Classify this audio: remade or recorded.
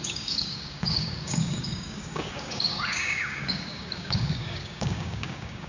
remade